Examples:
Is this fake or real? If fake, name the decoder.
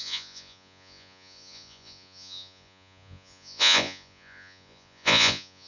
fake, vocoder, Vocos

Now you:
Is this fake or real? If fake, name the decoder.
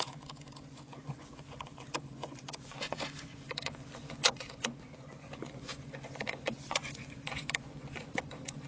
fake, vocoder, Vocos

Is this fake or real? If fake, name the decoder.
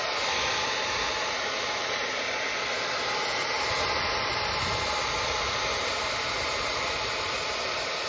real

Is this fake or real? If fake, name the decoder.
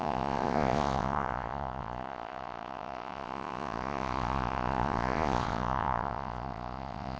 fake, vocoder, Vocos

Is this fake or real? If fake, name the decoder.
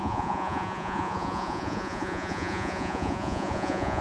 fake, vocoder, Vocos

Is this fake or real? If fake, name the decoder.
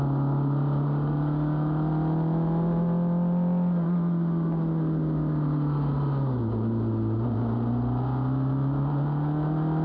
real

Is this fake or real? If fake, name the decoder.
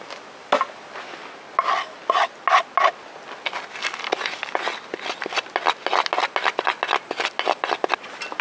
real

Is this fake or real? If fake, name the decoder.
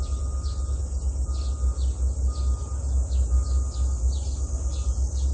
real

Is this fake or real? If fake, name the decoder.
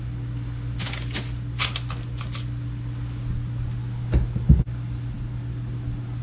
real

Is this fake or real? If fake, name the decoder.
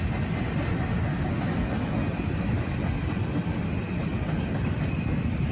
real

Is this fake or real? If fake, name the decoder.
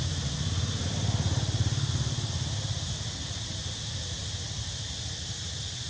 real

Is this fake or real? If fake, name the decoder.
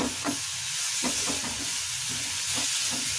fake, vocoder, Vocos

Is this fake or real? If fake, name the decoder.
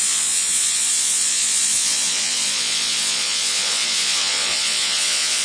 fake, vocoder, Vocos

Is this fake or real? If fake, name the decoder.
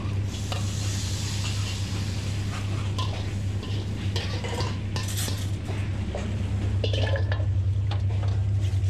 real